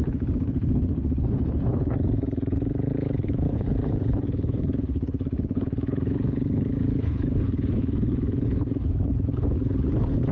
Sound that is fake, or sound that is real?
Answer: fake